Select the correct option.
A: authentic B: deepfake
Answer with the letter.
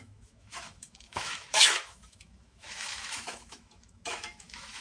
B